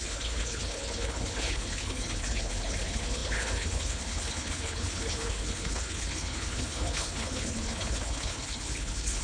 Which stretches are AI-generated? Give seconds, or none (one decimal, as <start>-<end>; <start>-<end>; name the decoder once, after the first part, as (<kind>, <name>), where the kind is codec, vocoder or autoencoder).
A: 0.0-9.2 (codec, HILCodec)